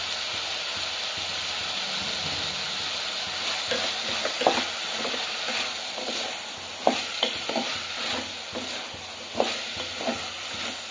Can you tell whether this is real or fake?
real